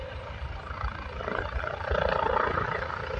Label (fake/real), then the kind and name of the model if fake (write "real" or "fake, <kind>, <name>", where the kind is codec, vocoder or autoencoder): real